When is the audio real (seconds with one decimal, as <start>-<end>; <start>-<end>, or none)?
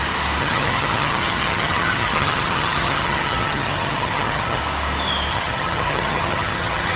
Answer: 0.0-0.4; 4.6-5.3